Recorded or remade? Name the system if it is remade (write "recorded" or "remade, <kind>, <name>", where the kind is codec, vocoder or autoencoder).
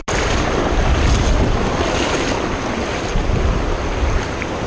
recorded